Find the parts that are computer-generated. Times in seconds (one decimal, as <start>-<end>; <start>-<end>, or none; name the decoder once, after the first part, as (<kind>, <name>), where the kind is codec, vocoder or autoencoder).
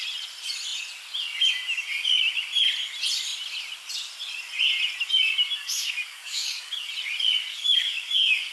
5.6-6.9 (codec, DAC); 7.5-8.5